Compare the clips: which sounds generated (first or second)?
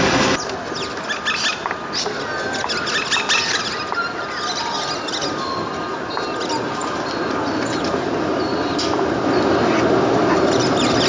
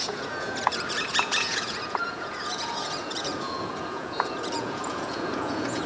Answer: second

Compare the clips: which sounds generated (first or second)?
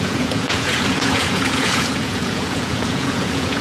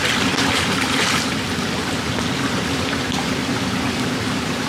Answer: first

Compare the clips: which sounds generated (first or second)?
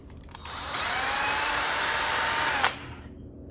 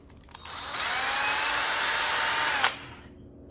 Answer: first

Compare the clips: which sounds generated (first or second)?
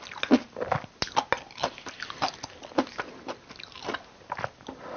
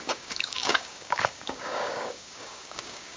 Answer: second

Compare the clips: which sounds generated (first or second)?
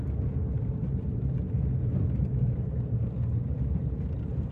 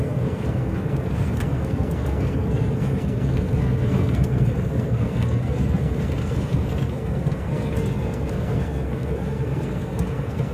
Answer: second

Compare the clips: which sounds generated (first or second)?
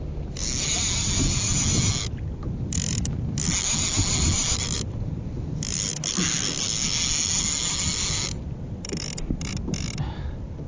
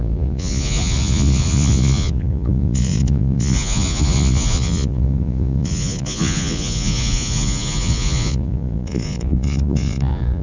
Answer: second